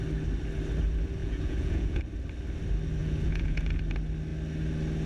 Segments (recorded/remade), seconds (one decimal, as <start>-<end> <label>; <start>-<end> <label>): 0.0-1.2 recorded; 1.2-2.0 remade; 2.0-3.0 recorded; 3.0-3.8 remade; 3.8-5.1 recorded